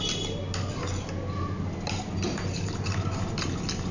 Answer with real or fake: real